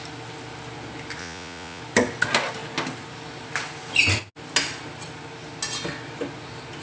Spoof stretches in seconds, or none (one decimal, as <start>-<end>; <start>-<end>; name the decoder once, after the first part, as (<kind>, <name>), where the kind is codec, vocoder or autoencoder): 1.2-1.8 (vocoder, Vocos)